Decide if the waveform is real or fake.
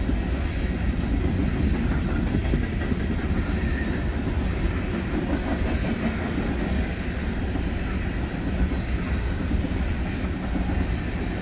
real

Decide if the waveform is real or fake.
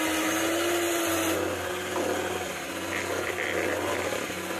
real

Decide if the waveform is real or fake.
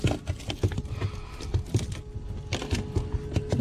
real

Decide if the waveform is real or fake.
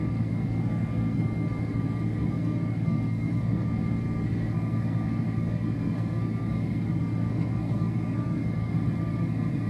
fake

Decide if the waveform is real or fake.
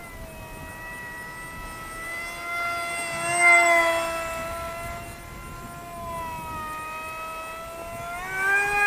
real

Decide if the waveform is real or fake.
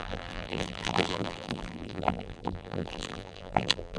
fake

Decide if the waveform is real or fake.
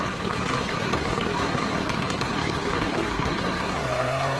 fake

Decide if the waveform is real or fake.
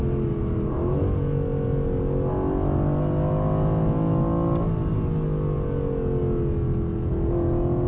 real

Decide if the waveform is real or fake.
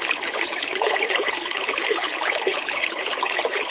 fake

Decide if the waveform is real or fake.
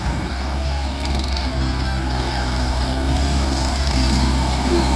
fake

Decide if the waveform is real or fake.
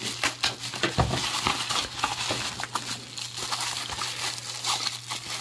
real